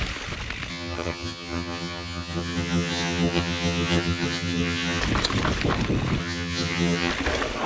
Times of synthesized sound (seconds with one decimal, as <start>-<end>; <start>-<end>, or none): 0.7-5.0; 6.2-7.1